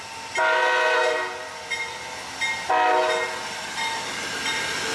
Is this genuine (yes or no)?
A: yes